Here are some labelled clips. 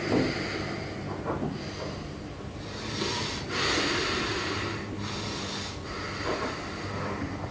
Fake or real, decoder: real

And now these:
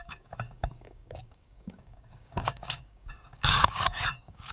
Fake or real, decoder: fake, codec, DAC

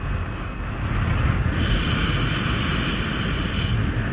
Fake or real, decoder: real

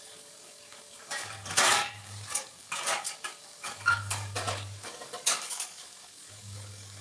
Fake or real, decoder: fake, codec, DAC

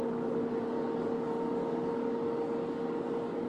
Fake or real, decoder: fake, codec, DAC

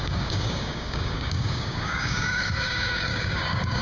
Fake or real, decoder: fake, codec, DAC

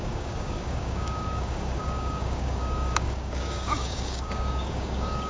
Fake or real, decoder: fake, codec, DAC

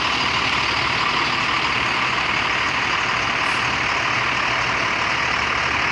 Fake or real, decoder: real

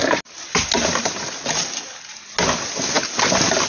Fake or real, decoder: real